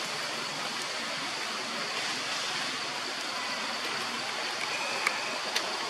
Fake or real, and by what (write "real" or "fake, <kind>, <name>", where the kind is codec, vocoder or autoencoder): real